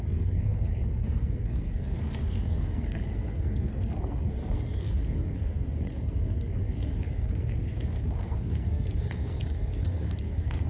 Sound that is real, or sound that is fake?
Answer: fake